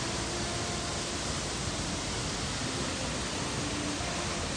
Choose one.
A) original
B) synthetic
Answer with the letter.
A